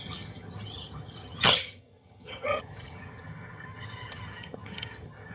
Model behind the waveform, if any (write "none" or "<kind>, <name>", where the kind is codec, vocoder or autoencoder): vocoder, HiFi-GAN